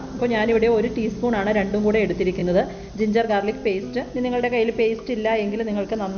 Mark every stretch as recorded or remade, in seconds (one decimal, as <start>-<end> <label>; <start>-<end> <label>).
0.0-6.2 recorded